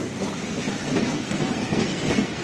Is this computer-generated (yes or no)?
yes